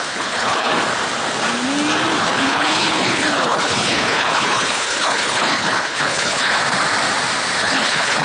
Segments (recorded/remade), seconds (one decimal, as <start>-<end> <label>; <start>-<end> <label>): 0.0-0.7 remade; 0.7-2.2 recorded; 2.2-6.6 remade; 6.6-7.6 recorded; 7.6-8.2 remade